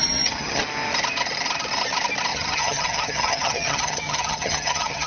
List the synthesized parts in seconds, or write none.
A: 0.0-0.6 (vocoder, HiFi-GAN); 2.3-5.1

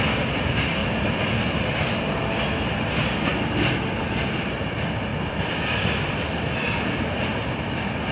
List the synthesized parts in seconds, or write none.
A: 0.8-1.4 (vocoder, BigVGAN v2); 5.1-7.4

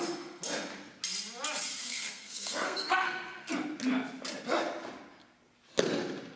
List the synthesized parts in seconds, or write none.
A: 1.8-3.5 (codec, SNAC)

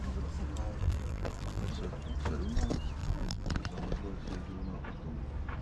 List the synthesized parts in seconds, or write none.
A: 0.8-1.7 (vocoder, BigVGAN v2); 3.0-3.5

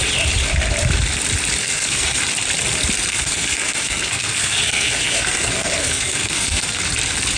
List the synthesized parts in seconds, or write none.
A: 1.6-2.2 (codec, SNAC); 3.1-6.8